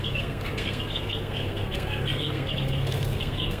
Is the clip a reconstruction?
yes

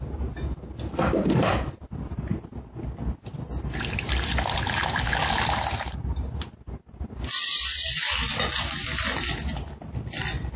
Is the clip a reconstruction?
no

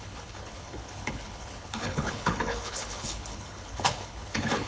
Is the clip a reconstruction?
yes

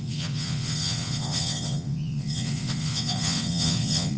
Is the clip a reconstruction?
yes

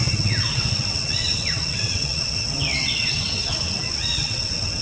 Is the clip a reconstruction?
yes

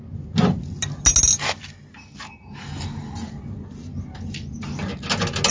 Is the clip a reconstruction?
no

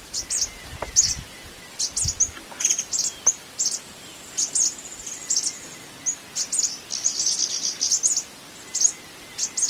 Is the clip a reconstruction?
no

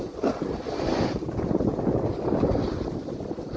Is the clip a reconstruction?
no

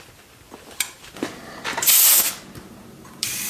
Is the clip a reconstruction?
no